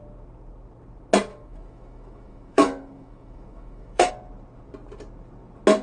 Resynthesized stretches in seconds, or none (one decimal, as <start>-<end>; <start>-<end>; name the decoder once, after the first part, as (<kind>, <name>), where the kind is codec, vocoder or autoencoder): 1.3-4.1 (autoencoder, DAC-VAE)